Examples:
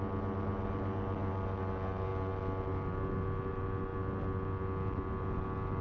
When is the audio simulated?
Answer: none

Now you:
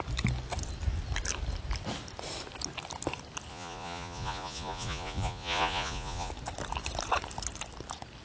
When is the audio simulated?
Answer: 3.5-6.3

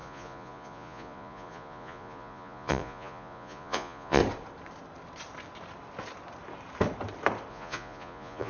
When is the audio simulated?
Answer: 0.0-4.2; 7.5-8.5

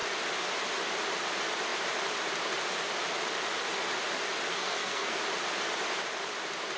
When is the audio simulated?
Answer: 4.5-5.2

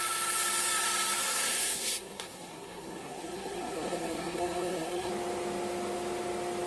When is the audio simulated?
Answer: 1.2-5.1

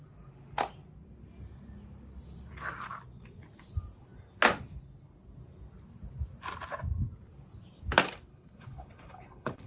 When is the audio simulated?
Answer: 8.3-9.7

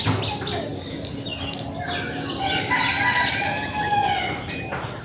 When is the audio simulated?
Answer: 4.0-5.0